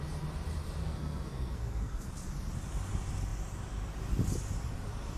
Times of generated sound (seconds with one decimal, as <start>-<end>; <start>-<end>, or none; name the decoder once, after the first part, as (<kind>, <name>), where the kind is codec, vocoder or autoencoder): 0.8-2.1 (codec, SNAC)